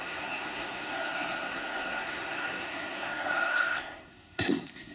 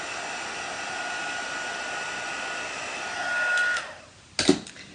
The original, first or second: second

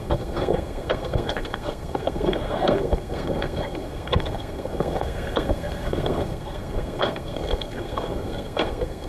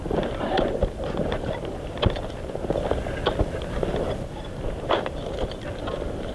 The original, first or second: second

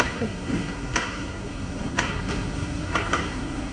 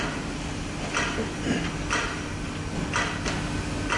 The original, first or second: second